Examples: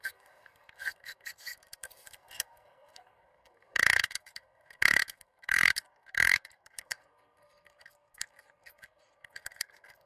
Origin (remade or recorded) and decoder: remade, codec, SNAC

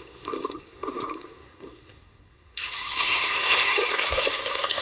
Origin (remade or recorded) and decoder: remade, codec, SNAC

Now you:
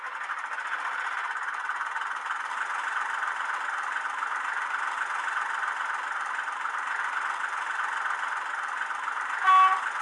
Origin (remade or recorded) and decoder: recorded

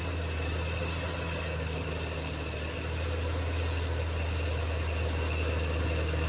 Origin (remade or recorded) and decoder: recorded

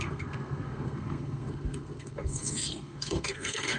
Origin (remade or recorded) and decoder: remade, codec, SNAC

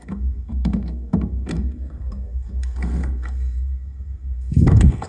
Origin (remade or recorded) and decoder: remade, codec, SNAC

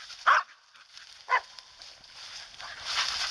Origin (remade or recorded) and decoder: recorded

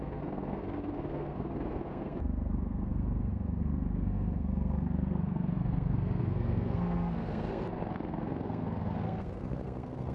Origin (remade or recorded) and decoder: remade, codec, SNAC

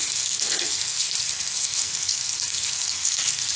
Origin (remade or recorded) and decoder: remade, codec, SNAC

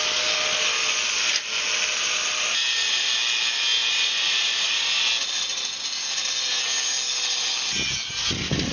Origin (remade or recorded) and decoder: recorded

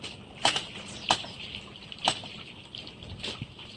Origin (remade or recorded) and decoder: recorded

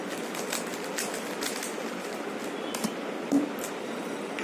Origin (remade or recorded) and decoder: recorded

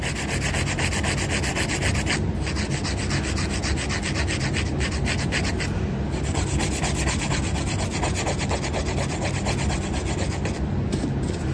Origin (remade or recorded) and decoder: recorded